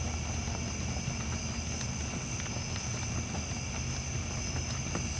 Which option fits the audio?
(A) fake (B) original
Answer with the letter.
B